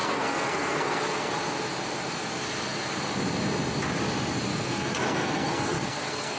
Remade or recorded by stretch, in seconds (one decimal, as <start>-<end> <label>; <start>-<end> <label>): 0.0-1.3 remade; 1.3-4.5 recorded; 4.5-6.4 remade